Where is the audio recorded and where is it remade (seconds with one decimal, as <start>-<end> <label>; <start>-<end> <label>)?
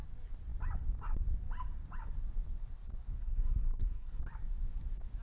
0.0-3.2 recorded; 3.2-4.2 remade; 4.2-5.2 recorded